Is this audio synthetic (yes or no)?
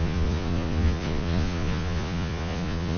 yes